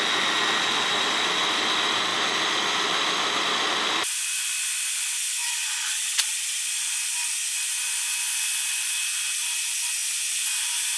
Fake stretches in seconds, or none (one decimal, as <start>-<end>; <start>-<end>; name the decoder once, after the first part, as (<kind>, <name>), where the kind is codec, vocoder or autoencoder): 5.4-6.6 (vocoder, Vocos)

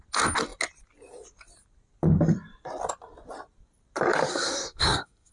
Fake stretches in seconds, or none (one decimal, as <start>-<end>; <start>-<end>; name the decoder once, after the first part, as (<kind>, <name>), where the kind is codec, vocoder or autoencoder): 4.3-5.3 (codec, SNAC)

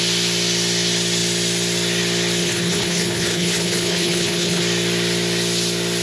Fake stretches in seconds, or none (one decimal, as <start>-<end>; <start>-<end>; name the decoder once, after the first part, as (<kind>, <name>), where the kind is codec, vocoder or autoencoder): 2.4-4.6 (codec, HILCodec)

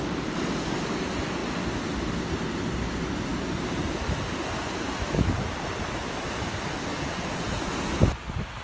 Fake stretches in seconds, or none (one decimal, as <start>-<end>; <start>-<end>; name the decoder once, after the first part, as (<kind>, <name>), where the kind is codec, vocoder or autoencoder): 6.9-7.5 (vocoder, Vocos)

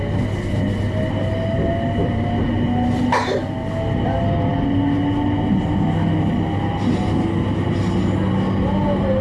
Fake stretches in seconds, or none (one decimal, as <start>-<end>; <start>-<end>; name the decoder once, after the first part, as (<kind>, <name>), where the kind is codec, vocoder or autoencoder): none

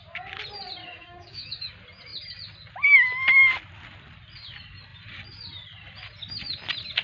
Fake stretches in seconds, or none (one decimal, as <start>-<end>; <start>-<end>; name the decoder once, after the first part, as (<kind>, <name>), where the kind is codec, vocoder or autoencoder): 0.8-1.7 (autoencoder, DAC-VAE)

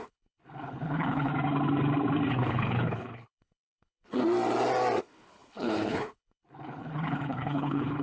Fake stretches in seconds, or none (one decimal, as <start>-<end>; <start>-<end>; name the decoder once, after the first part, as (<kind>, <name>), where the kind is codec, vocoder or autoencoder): 0.0-1.3 (codec, HILCodec); 2.3-4.2; 5.0-8.0